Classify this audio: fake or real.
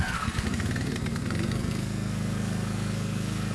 fake